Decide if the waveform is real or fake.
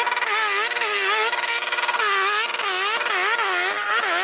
real